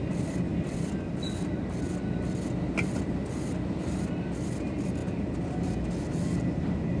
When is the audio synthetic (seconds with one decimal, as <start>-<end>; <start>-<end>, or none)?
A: none